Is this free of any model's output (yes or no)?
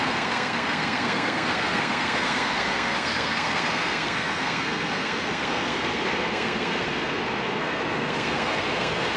no